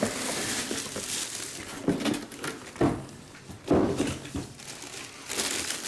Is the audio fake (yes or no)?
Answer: no